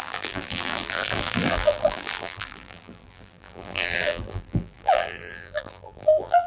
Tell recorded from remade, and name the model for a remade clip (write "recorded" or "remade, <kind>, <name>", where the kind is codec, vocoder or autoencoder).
remade, vocoder, BigVGAN v2